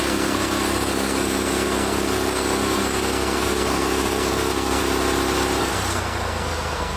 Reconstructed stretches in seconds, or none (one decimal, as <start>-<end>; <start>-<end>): 0.0-4.8; 5.6-7.0